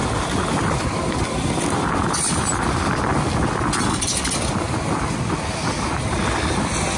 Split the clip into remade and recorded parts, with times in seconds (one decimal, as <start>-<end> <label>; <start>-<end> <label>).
0.0-7.0 recorded